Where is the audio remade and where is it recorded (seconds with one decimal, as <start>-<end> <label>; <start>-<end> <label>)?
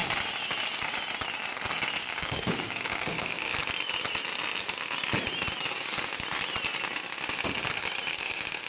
0.0-2.0 recorded; 2.0-3.5 remade; 3.5-8.1 recorded; 8.1-8.7 remade